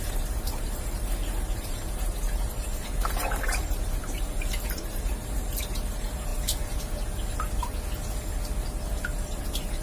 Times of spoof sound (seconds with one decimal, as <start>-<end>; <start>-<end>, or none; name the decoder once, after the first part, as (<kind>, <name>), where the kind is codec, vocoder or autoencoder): 0.0-6.3 (vocoder, BigVGAN v2); 9.4-9.8